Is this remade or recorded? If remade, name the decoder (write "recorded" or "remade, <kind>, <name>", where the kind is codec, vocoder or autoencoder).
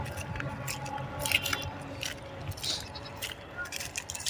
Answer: recorded